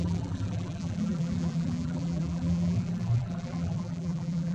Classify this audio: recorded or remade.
remade